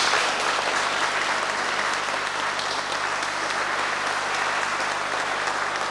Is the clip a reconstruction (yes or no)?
no